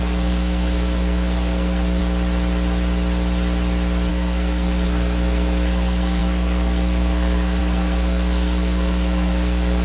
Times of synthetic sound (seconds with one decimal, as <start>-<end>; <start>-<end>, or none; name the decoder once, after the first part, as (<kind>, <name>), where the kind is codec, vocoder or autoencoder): 0.0-2.0 (codec, SNAC); 4.1-9.8